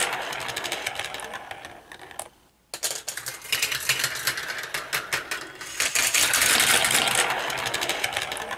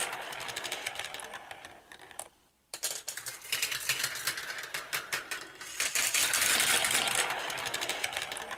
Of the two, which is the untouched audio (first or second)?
first